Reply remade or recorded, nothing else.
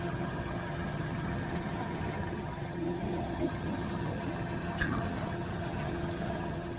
remade